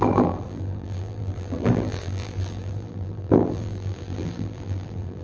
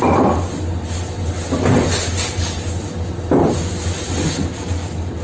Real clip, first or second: second